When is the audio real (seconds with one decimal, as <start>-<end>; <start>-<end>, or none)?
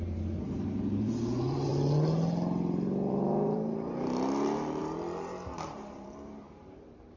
1.7-3.1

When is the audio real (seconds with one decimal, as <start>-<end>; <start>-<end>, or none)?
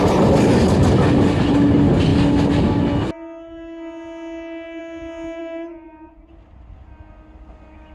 0.0-5.4; 6.1-7.9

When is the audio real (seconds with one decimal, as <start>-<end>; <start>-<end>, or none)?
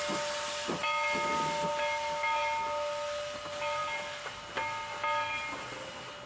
0.0-6.3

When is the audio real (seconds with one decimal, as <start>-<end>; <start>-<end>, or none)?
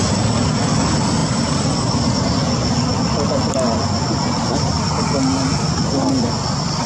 0.0-1.2; 2.3-6.9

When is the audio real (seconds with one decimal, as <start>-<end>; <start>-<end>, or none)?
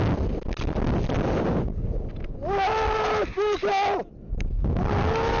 0.0-5.4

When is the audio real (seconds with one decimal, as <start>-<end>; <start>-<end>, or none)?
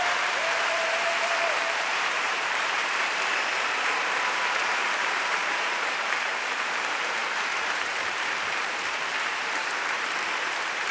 none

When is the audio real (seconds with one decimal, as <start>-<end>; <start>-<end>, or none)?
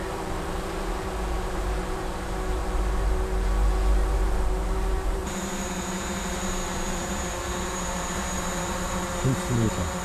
none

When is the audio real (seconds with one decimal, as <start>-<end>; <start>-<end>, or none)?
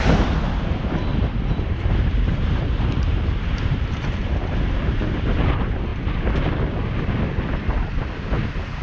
0.0-1.1; 4.3-8.8